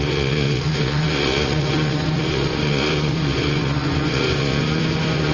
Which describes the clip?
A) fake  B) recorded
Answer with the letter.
A